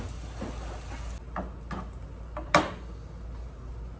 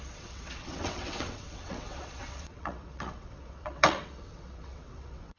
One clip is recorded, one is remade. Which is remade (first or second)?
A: second